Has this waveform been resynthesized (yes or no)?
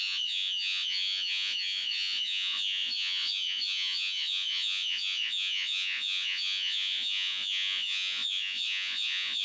yes